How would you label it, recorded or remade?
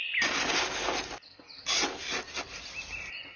recorded